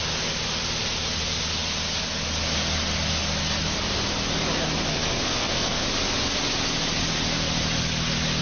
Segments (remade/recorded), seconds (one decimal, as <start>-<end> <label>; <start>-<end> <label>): 0.0-4.9 recorded; 4.9-5.8 remade; 5.8-8.4 recorded